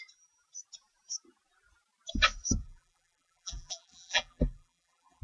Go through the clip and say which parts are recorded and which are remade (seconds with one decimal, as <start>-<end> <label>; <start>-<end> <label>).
0.0-2.6 recorded; 2.6-5.2 remade